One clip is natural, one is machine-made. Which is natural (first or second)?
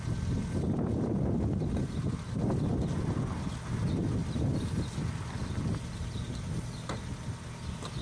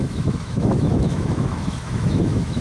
first